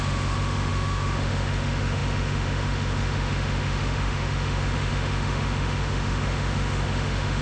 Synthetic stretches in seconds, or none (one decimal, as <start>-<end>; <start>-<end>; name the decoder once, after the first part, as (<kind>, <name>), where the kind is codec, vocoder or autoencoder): 0.0-7.4 (autoencoder, DAC-VAE)